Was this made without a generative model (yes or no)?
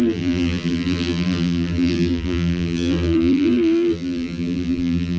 no